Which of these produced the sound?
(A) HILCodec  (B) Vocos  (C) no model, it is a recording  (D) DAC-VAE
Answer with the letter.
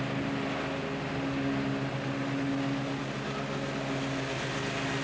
C